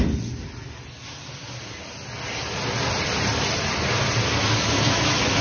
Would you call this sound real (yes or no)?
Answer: yes